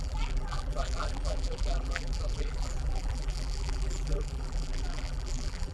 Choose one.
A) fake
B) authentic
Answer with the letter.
A